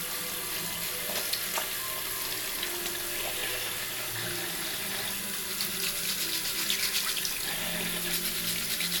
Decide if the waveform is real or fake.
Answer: real